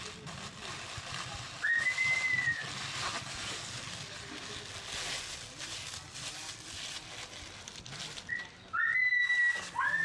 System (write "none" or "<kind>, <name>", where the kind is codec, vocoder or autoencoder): none